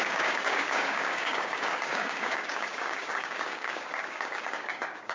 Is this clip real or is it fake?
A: fake